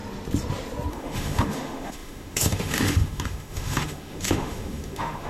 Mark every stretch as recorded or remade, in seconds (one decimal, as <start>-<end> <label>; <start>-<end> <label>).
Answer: 0.0-0.9 recorded; 0.9-5.3 remade